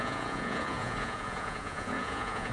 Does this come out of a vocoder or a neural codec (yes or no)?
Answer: yes